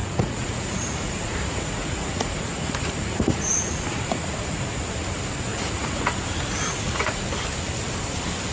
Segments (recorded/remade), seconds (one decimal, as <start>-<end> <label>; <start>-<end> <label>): 0.0-4.7 remade; 4.7-5.5 recorded; 5.5-6.2 remade; 6.2-6.7 recorded; 6.7-7.2 remade; 7.2-8.5 recorded